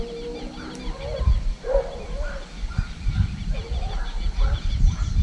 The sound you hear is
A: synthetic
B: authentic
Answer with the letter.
B